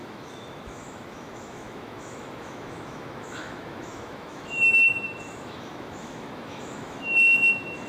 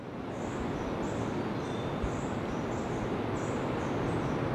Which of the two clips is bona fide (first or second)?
second